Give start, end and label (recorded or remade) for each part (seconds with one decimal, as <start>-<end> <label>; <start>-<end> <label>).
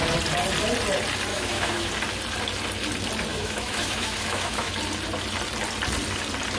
0.0-1.3 recorded; 1.3-1.9 remade; 1.9-3.3 recorded; 3.3-4.7 remade; 4.7-6.6 recorded